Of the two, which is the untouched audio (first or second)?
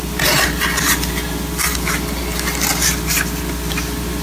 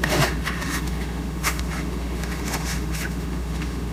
first